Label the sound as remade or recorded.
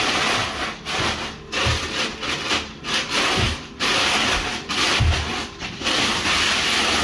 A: recorded